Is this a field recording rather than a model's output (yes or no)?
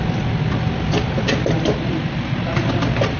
yes